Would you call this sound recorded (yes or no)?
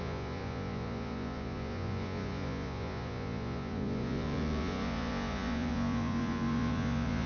no